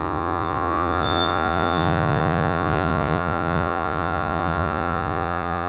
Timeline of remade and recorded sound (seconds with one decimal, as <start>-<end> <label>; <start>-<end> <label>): 0.0-5.7 remade